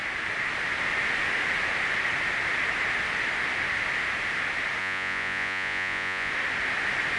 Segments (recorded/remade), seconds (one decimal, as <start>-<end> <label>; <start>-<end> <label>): 0.0-4.8 recorded; 4.8-6.3 remade; 6.3-7.2 recorded